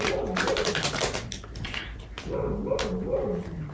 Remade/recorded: recorded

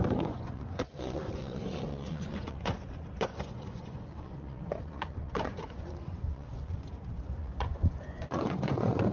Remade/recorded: remade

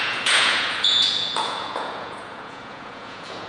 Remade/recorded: remade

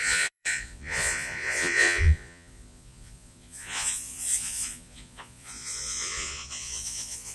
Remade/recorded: remade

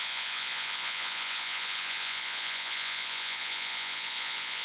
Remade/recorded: remade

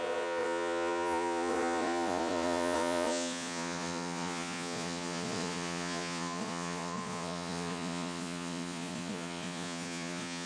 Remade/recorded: remade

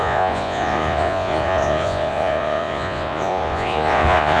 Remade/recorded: remade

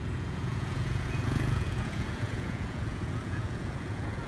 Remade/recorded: remade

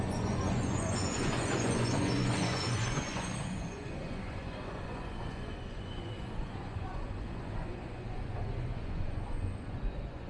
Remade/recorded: remade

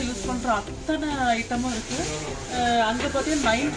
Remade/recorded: recorded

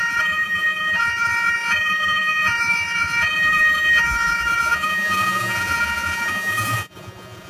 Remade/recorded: remade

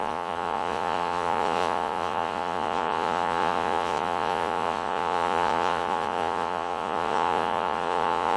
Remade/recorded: remade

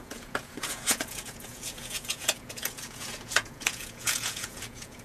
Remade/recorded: remade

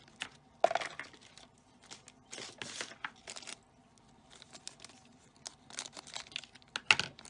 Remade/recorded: recorded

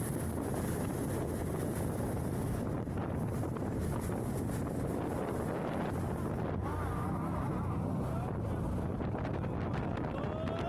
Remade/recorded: recorded